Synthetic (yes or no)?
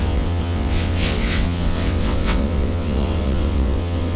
yes